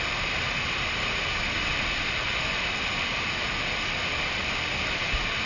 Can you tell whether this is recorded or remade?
recorded